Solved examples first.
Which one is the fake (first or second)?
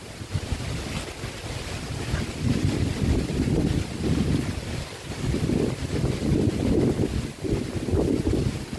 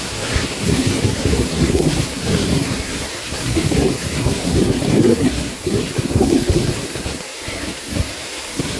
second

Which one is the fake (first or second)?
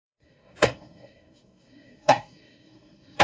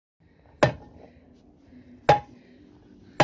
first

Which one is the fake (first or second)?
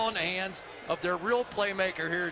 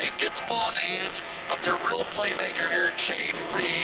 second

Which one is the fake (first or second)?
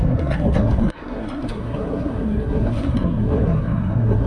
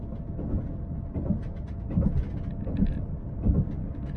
first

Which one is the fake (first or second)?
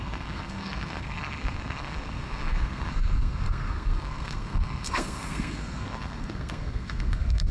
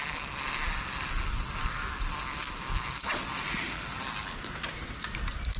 first